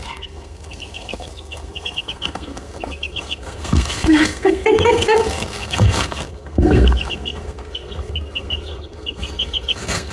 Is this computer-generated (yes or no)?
yes